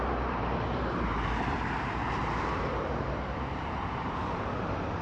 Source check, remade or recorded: remade